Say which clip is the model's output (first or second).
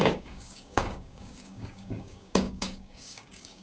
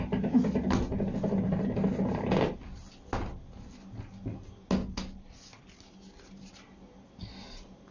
first